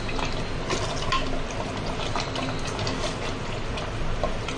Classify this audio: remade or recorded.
recorded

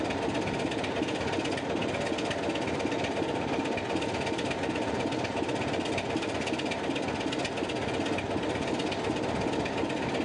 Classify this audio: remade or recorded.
recorded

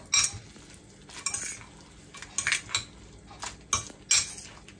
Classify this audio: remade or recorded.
recorded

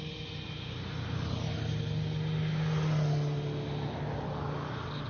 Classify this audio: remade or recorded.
recorded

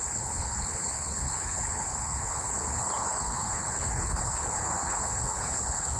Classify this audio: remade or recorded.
remade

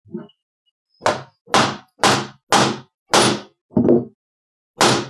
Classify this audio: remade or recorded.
recorded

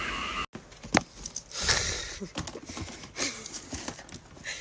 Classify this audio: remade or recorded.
recorded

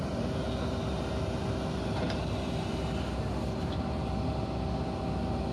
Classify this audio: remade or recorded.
recorded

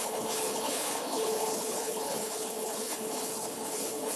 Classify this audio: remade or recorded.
remade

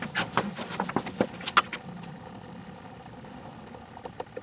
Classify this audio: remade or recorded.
recorded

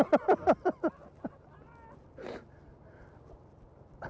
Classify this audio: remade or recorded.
recorded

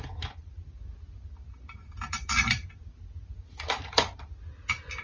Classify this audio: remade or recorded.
recorded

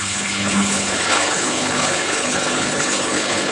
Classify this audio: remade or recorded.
remade